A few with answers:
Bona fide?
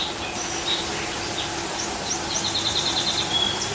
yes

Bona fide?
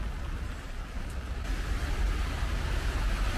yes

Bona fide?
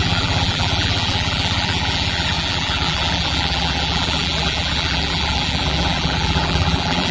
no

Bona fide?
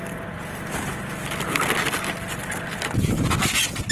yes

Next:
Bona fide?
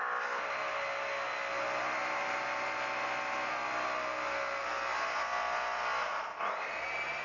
yes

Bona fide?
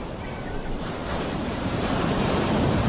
no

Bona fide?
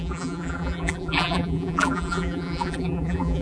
no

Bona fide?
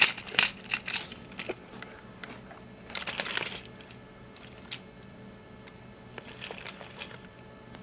yes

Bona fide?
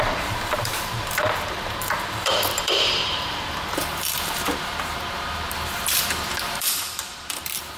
no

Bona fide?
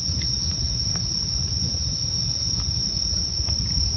yes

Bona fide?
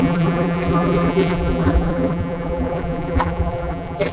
no